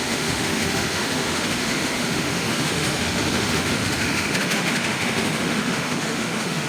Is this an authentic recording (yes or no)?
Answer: no